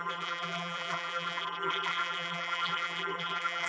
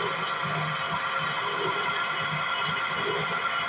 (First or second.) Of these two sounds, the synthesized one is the first